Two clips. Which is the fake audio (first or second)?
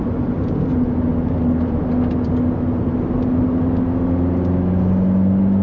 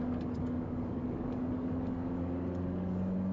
second